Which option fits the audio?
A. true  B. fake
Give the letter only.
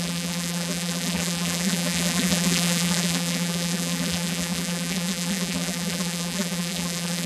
B